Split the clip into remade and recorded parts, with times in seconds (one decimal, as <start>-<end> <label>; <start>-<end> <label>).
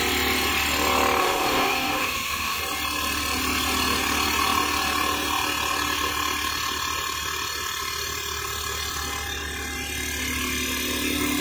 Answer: 0.0-1.2 recorded; 1.2-2.6 remade; 2.6-11.4 recorded